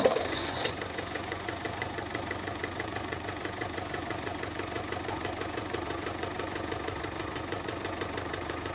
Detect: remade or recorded remade